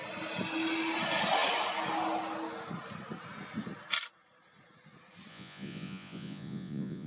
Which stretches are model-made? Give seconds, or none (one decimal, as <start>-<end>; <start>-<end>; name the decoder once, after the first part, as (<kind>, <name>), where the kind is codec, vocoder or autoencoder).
5.3-7.1 (vocoder, Vocos)